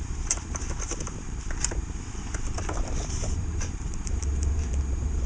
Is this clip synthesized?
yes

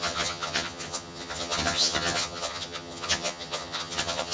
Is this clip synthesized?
yes